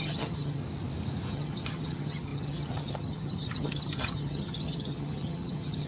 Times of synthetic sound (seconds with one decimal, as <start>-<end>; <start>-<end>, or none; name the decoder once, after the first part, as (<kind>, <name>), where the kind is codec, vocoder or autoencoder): 0.0-0.6 (vocoder, HiFi-GAN); 1.3-5.9